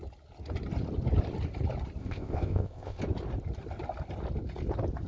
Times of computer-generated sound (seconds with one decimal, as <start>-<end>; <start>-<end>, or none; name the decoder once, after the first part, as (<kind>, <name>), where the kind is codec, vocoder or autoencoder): 2.0-3.0 (codec, ZipCodec)